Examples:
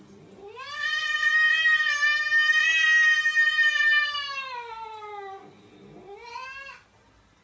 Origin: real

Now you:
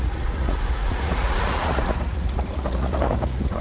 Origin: fake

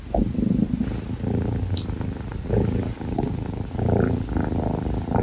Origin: real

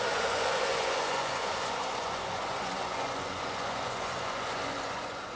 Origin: fake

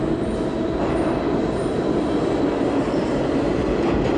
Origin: real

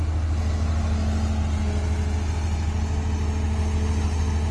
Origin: real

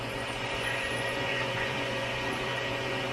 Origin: fake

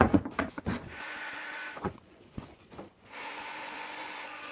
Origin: fake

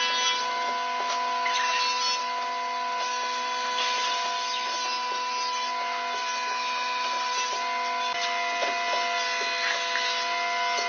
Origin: real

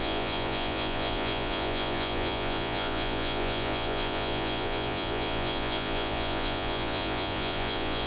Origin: fake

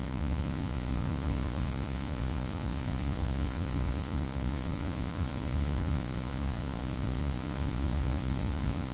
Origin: fake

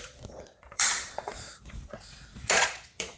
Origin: fake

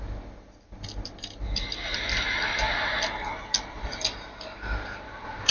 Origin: real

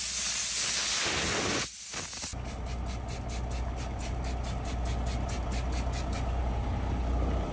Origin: real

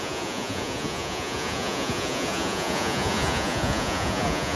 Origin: fake